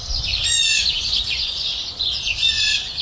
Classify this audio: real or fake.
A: fake